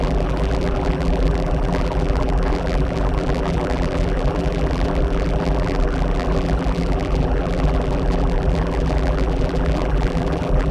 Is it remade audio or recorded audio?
remade